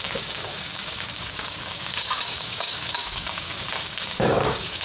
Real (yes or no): no